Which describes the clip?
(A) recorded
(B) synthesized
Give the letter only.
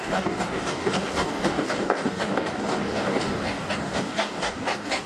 B